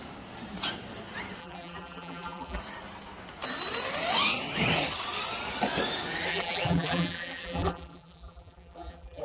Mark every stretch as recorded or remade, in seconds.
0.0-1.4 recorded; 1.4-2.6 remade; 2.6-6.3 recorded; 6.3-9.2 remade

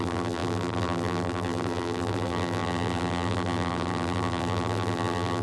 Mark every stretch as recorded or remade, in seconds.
0.0-5.4 remade

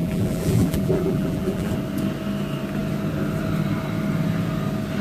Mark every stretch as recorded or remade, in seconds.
0.0-1.7 remade; 1.7-5.0 recorded

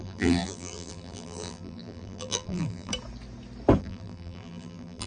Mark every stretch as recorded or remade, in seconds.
0.0-2.9 remade; 2.9-3.8 recorded; 3.8-5.1 remade

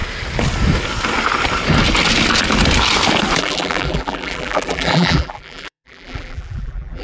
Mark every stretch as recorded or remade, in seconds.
0.0-3.4 recorded; 3.4-7.0 remade

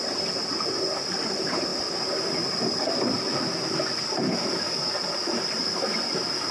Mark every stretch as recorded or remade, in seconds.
0.0-6.5 recorded

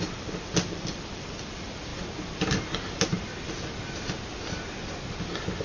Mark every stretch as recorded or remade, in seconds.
0.0-1.9 remade; 1.9-5.6 recorded

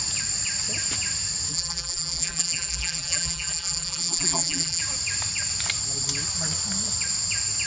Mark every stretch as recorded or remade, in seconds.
0.0-1.5 recorded; 1.5-4.8 remade; 4.8-7.7 recorded